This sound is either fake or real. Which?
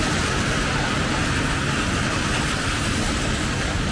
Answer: real